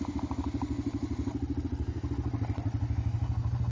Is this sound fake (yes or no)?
no